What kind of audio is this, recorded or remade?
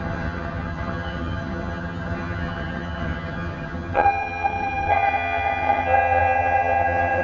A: remade